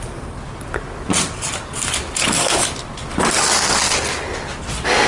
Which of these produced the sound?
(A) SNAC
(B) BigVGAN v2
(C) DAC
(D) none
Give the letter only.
D